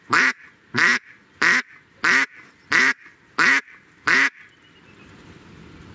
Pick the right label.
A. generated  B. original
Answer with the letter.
B